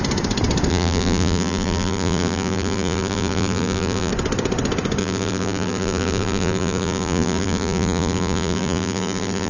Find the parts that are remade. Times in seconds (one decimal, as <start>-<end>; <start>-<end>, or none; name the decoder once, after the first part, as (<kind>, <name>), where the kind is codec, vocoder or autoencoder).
0.7-4.1 (vocoder, BigVGAN v2); 5.0-9.5